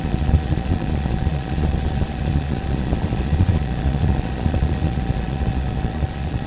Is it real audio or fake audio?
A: fake